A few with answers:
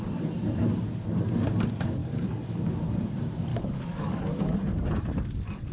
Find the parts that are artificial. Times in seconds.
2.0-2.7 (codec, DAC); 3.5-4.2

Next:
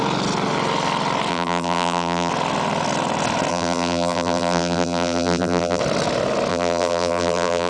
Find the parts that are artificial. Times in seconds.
1.3-2.3 (vocoder, BigVGAN v2); 3.5-5.8; 6.5-7.7

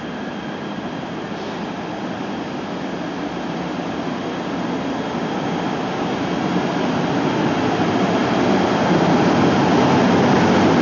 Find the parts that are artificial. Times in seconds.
none

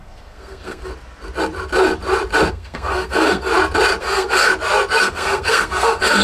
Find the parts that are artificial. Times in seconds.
0.0-0.9 (codec, SNAC); 2.5-3.5; 4.0-4.5; 5.0-6.2

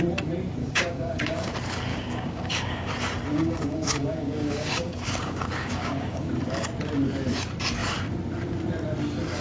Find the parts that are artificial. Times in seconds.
0.6-1.5 (codec, DAC); 1.9-2.9; 3.3-6.3

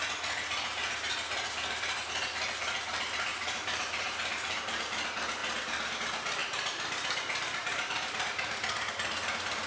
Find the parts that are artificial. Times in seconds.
3.3-4.6 (vocoder, BigVGAN v2); 5.4-6.0; 6.4-8.9

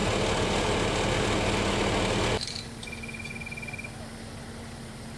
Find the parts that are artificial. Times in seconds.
none